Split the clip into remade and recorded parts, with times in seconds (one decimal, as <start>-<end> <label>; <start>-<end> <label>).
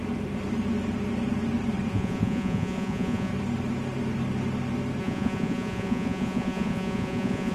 0.0-1.9 recorded; 1.9-3.3 remade; 3.3-5.0 recorded; 5.0-7.5 remade